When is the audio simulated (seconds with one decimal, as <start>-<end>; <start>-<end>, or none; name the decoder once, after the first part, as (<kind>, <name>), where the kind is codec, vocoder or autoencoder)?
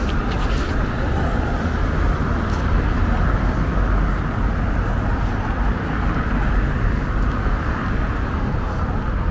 none